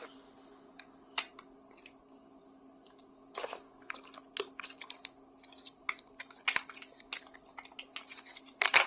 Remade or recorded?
recorded